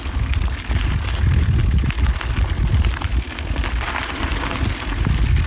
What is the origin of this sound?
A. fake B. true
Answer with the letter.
B